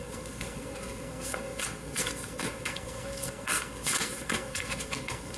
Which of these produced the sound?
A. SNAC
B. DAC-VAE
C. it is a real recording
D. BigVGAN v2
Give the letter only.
A